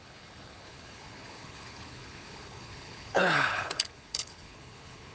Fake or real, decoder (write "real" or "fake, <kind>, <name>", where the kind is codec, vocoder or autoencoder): fake, codec, HILCodec